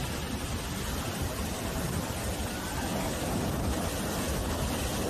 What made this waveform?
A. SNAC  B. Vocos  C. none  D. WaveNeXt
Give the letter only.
C